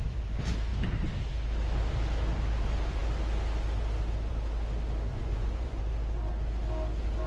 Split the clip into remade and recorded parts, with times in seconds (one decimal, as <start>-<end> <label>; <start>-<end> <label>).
0.0-5.1 recorded; 5.1-5.8 remade; 5.8-7.3 recorded